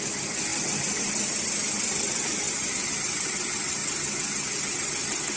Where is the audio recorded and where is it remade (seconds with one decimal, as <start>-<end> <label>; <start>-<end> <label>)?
0.0-5.4 recorded